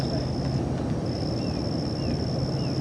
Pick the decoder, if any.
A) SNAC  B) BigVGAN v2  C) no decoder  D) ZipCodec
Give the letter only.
C